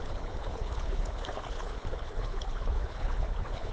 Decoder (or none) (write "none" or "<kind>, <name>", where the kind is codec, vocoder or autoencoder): codec, HILCodec